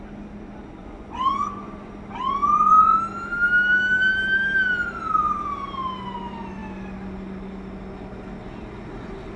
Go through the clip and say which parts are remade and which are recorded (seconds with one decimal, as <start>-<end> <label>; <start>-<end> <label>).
0.0-0.8 recorded; 0.8-1.9 remade; 1.9-2.4 recorded; 2.4-3.0 remade; 3.0-9.4 recorded